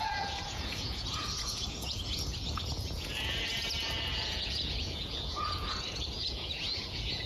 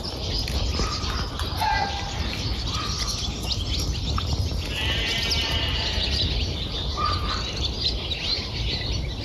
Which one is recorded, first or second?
second